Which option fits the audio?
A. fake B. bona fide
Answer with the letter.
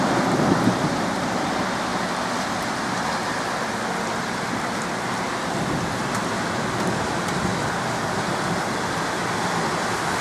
B